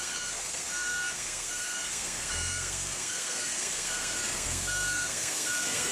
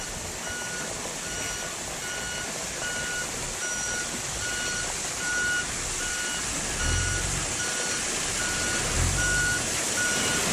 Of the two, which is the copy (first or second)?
first